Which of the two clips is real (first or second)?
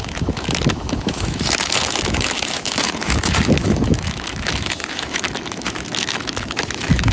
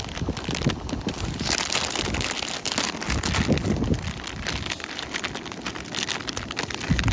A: second